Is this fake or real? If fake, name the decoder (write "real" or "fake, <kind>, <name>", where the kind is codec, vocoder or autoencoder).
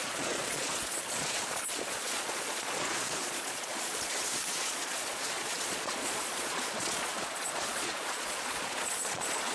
fake, vocoder, Vocos